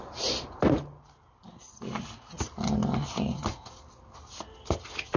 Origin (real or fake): real